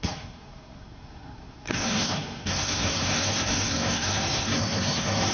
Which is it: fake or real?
fake